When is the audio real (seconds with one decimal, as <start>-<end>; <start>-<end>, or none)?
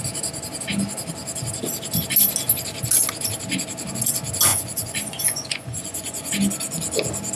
0.0-4.5; 6.3-7.4